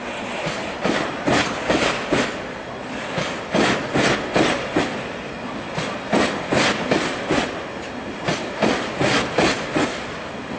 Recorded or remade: recorded